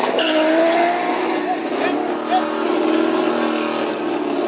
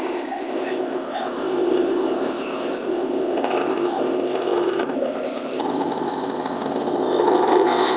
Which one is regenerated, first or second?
second